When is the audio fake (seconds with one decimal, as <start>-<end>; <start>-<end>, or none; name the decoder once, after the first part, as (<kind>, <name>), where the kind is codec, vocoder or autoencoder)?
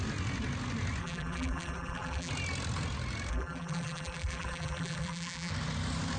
1.0-2.3 (vocoder, BigVGAN v2); 3.3-5.5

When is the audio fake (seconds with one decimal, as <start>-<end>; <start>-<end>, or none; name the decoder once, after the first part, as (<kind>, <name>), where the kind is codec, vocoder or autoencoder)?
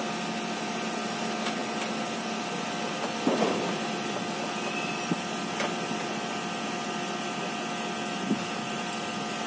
none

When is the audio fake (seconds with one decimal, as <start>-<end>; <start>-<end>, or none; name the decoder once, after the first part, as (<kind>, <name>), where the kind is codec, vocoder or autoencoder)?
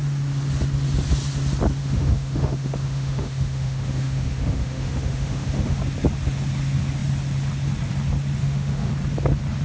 1.8-5.8 (autoencoder, DAC-VAE); 8.4-8.9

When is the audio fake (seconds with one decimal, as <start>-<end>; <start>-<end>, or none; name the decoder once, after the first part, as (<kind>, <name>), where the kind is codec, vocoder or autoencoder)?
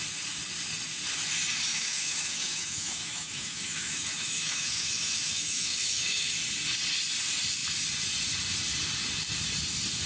1.7-6.3 (autoencoder, DAC-VAE)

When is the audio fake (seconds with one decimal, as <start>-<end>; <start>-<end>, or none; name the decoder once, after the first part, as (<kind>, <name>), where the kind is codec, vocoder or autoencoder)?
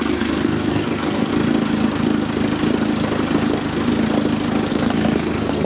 0.0-1.3 (codec, SNAC); 4.7-5.6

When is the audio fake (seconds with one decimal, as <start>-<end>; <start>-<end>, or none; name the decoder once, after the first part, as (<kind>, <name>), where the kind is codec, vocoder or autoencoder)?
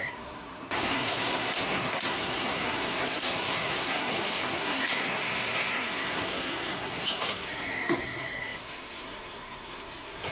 0.0-10.3 (codec, SNAC)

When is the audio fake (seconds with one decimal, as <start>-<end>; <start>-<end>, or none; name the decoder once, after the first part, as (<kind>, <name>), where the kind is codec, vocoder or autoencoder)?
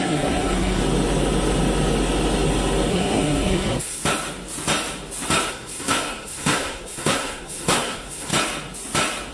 0.0-0.8 (codec, SNAC); 2.9-4.0; 5.5-8.3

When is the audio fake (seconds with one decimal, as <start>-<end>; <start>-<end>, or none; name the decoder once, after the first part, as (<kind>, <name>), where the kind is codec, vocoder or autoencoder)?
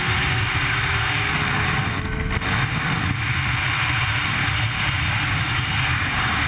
0.0-1.4 (codec, DAC); 5.3-6.5